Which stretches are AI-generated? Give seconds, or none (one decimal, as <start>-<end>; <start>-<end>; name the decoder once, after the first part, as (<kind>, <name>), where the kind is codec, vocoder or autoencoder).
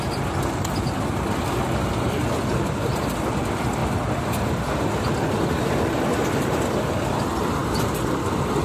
none